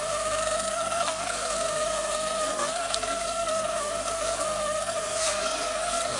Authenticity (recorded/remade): remade